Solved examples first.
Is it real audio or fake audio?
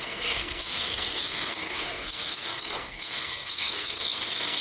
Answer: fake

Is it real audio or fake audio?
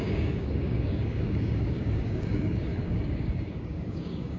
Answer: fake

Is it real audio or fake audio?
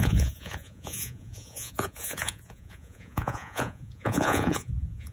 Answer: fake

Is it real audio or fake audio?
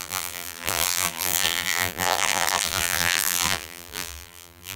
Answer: fake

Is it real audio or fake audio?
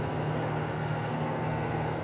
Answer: fake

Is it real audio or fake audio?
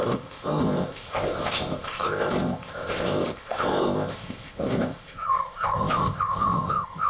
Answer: fake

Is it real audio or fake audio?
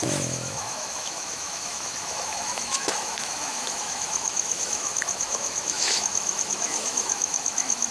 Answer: fake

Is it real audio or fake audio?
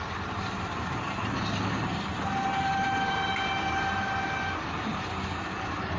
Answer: real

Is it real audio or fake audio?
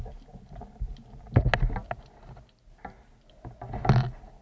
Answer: real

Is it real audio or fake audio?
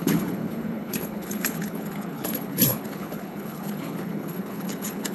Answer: fake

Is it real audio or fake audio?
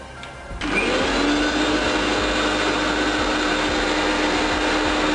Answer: real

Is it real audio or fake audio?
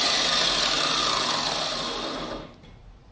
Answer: real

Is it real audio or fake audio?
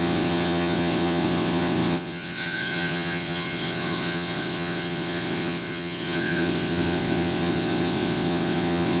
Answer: fake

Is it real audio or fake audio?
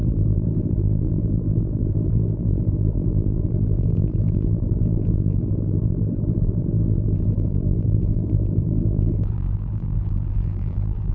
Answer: fake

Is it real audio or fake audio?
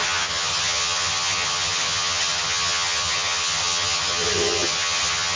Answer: fake